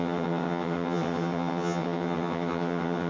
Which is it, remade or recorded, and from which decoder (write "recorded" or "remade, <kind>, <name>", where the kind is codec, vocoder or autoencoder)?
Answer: remade, vocoder, HiFi-GAN